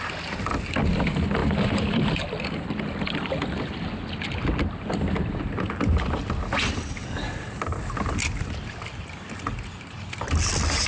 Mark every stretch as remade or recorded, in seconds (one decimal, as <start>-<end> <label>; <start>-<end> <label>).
0.0-1.4 recorded; 1.4-2.3 remade; 2.3-10.9 recorded